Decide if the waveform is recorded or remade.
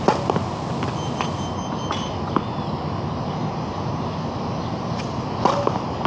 recorded